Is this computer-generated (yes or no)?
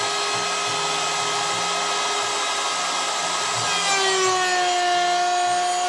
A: no